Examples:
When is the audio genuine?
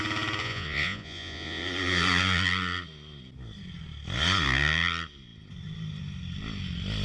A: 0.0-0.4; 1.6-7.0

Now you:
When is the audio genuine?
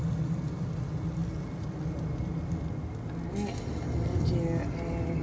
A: 0.0-5.2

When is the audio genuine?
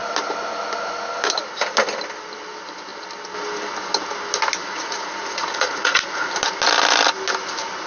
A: 0.0-4.6; 6.3-7.9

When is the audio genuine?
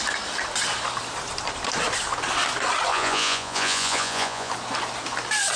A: 0.0-2.9; 4.5-5.6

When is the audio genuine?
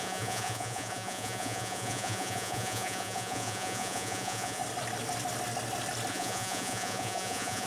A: 4.6-6.1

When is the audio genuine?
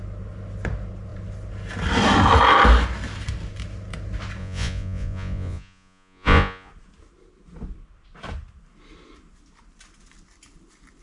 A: 0.0-4.4; 6.7-11.0